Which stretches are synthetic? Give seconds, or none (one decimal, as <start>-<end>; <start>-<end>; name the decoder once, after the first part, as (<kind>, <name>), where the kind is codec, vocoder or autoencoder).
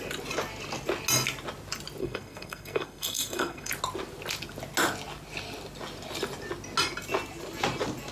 2.0-3.7 (codec, SNAC)